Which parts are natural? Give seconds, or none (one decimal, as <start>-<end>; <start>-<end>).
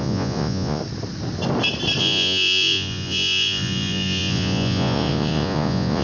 0.8-2.0